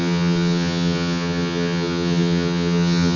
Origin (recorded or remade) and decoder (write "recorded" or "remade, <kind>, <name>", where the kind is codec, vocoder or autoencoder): remade, vocoder, HiFi-GAN